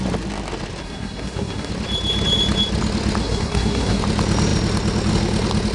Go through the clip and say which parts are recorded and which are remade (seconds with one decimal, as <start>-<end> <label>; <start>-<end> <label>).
0.0-0.8 recorded; 0.8-1.7 remade; 1.7-3.2 recorded; 3.2-4.0 remade; 4.0-5.7 recorded